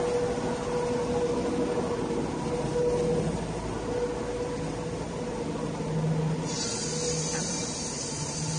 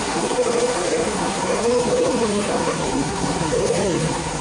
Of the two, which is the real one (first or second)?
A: first